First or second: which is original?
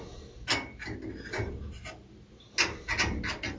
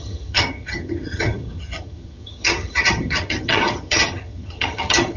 first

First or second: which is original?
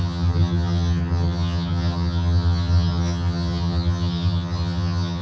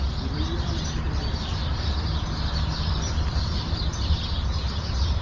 second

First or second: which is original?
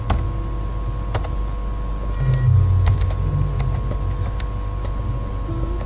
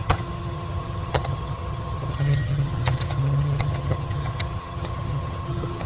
first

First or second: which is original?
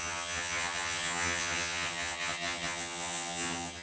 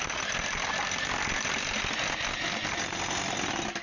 second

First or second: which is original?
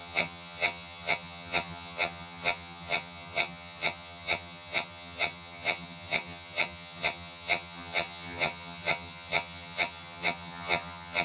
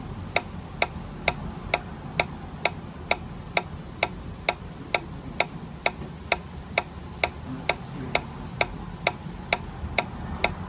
second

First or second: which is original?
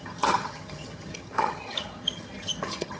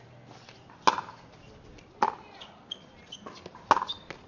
second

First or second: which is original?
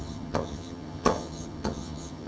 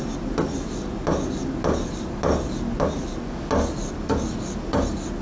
second